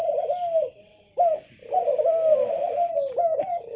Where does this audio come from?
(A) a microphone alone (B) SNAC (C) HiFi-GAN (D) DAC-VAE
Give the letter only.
A